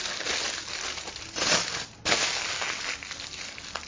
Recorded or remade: recorded